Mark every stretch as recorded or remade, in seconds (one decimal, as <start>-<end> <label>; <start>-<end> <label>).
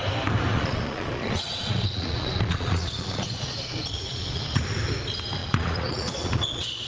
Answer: 0.0-0.5 recorded; 0.5-4.6 remade; 4.6-5.4 recorded; 5.4-6.9 remade